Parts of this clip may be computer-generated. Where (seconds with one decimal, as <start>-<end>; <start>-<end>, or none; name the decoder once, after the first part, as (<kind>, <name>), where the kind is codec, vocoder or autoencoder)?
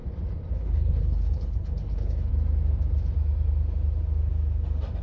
0.5-2.3 (codec, HILCodec)